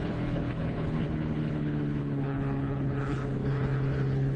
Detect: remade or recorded remade